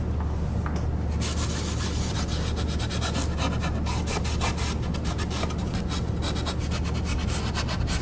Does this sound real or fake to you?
real